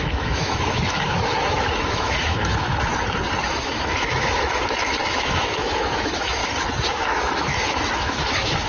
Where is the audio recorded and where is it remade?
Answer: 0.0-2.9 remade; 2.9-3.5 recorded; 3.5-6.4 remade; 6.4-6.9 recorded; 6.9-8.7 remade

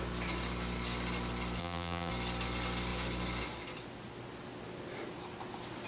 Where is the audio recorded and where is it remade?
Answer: 0.0-1.6 recorded; 1.6-2.1 remade; 2.1-5.9 recorded

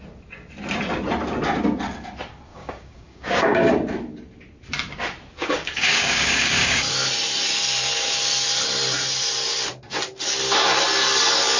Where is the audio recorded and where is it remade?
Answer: 0.0-2.5 recorded; 2.5-3.7 remade; 3.7-5.4 recorded; 5.4-6.9 remade; 6.9-11.6 recorded

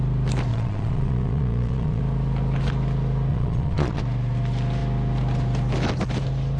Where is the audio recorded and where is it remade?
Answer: 0.0-0.5 recorded; 0.5-2.0 remade; 2.0-3.3 recorded; 3.3-4.0 remade; 4.0-6.6 recorded

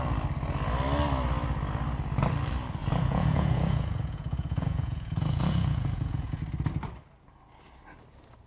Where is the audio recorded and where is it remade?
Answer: 0.0-2.8 recorded; 2.8-6.4 remade; 6.4-8.5 recorded